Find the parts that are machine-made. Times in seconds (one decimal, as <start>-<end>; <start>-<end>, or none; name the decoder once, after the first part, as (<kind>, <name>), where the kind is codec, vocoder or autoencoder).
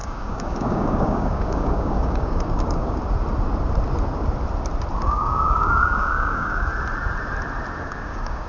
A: 0.0-3.0 (codec, DAC); 5.0-6.7; 7.8-8.5